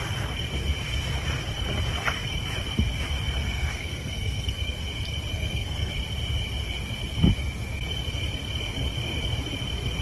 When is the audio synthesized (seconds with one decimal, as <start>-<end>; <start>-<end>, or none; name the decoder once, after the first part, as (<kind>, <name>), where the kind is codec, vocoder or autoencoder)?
3.4-4.8 (codec, SNAC); 5.3-5.9